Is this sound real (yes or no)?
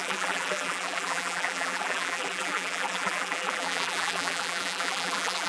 no